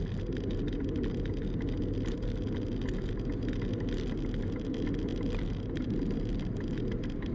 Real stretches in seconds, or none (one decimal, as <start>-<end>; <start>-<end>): 0.0-7.3